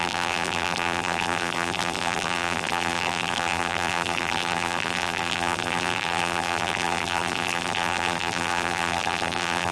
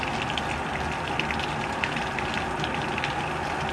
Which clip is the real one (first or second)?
second